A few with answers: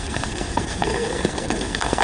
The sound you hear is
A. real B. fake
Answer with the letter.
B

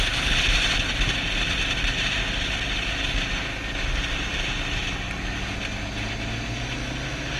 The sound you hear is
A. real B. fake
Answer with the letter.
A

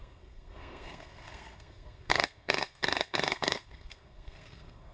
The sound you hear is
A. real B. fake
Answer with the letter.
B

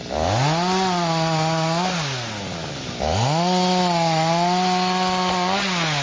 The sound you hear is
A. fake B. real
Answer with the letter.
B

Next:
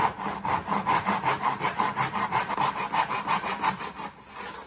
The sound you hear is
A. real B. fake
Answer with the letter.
A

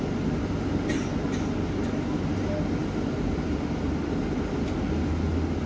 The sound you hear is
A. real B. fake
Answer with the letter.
A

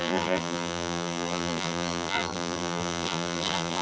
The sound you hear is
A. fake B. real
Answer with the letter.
A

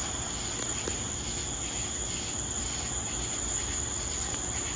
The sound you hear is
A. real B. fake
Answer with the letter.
A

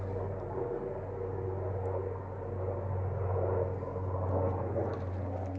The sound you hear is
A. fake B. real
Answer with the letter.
B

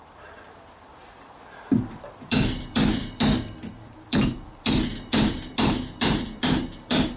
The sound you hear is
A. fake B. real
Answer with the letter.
A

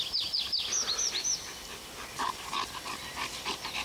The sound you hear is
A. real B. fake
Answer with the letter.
A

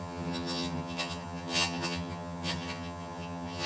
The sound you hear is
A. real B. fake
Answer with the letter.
B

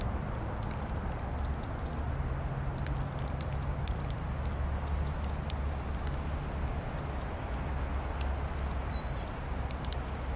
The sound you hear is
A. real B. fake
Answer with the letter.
A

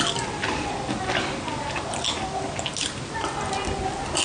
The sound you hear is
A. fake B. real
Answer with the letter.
B